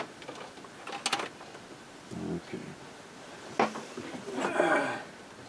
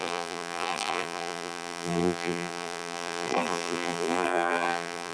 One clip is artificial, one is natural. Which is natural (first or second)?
first